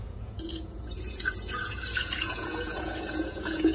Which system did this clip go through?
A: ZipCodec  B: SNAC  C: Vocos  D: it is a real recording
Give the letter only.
C